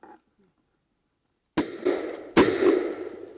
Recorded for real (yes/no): yes